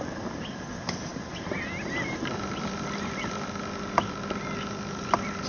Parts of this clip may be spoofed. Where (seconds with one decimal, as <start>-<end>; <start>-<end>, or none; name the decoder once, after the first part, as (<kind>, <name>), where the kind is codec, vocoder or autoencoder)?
none